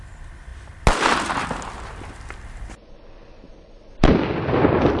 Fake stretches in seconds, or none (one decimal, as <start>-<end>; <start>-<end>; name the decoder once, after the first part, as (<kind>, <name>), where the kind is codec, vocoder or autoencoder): none